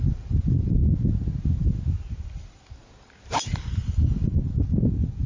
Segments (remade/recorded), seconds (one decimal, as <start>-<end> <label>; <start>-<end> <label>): 0.0-0.8 remade; 0.8-1.4 recorded; 1.4-5.3 remade